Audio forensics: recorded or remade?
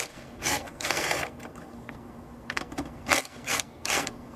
remade